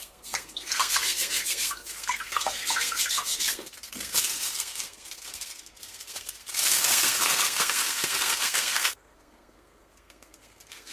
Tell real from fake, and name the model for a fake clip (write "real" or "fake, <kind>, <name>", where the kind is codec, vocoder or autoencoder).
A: fake, codec, SNAC